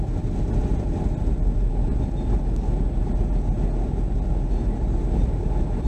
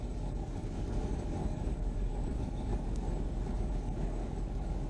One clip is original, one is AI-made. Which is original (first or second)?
first